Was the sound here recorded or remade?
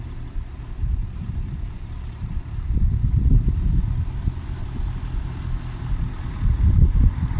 recorded